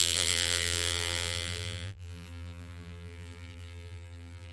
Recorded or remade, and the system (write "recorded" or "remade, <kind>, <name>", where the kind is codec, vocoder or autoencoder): remade, vocoder, BigVGAN v2